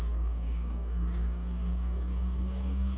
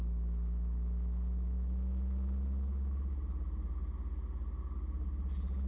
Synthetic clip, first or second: first